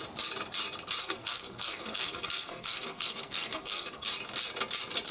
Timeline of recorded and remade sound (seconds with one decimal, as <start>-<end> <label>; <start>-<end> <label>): 0.0-1.0 recorded; 1.0-4.1 remade; 4.1-5.1 recorded

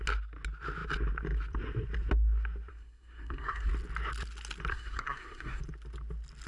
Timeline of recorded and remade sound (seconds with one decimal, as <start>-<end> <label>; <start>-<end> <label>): 0.0-2.7 recorded; 2.7-3.7 remade; 3.7-4.7 recorded; 4.7-5.6 remade; 5.6-6.5 recorded

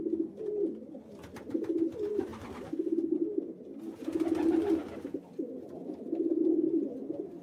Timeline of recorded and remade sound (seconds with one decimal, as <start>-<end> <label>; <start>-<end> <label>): 0.0-7.4 recorded

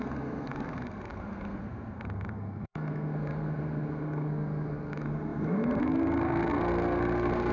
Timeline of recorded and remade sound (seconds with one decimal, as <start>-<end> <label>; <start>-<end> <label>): 0.0-7.5 remade

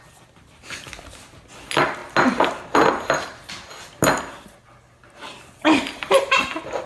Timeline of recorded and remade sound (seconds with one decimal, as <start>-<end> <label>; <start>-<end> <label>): 0.0-6.9 recorded

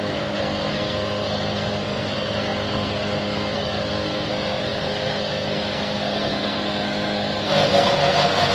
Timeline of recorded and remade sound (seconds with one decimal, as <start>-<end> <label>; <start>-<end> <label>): 0.0-8.5 remade

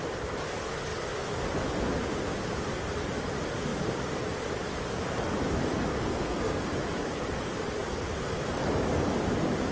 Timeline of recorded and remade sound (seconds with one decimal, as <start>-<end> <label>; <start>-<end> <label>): 0.0-5.9 recorded; 5.9-6.6 remade; 6.6-9.7 recorded

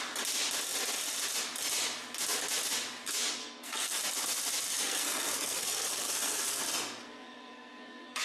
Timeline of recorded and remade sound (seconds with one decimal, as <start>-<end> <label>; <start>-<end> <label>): 0.0-3.4 recorded; 3.4-4.0 remade; 4.0-4.7 recorded; 4.7-6.6 remade; 6.6-7.0 recorded; 7.0-8.2 remade